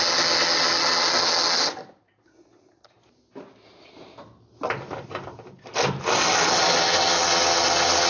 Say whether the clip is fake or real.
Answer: real